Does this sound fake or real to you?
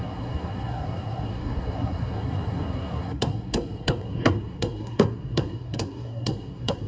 fake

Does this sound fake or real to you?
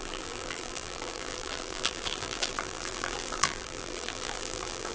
fake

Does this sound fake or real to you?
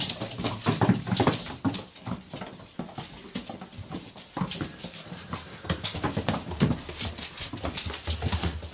real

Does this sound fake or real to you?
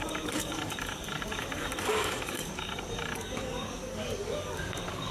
fake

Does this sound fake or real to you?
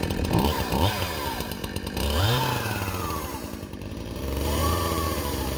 fake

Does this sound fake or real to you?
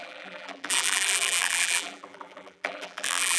fake